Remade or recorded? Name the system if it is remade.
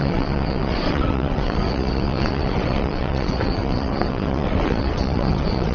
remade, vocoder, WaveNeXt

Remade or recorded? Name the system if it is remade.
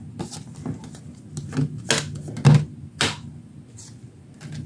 recorded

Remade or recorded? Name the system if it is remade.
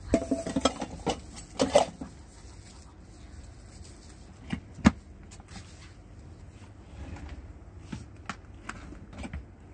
recorded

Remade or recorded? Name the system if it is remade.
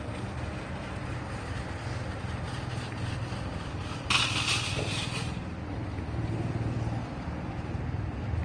recorded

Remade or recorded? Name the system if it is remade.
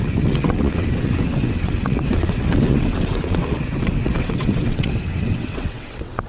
remade, vocoder, WaveNeXt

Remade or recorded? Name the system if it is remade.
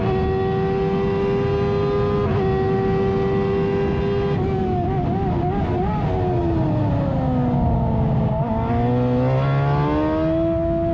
recorded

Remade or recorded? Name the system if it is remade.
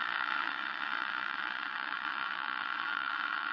remade, vocoder, WaveNeXt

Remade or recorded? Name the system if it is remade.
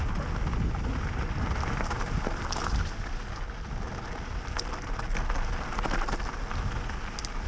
recorded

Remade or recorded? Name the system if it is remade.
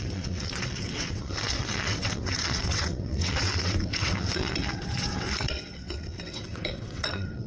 remade, vocoder, WaveNeXt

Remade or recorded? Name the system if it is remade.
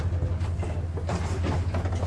recorded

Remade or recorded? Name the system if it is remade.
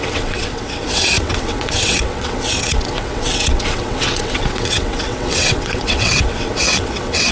remade, vocoder, WaveNeXt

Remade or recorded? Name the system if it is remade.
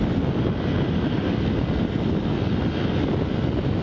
recorded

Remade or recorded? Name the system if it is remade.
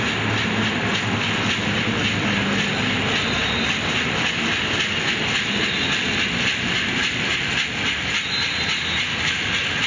recorded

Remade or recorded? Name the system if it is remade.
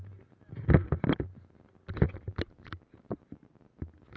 recorded